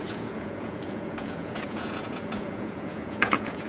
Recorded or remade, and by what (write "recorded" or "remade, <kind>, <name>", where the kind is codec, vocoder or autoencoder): remade, vocoder, Vocos